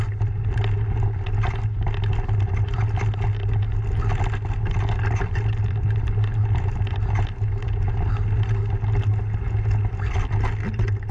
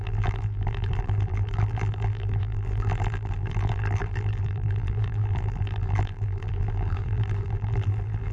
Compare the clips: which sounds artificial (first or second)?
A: second